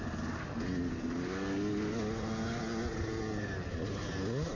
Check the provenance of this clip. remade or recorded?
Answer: recorded